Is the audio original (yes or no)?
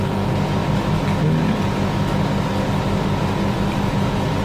yes